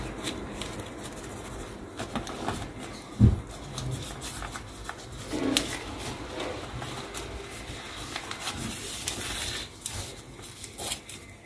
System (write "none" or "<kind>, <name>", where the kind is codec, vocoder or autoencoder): none